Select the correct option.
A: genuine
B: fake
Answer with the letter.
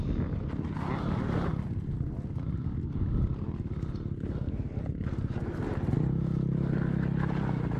A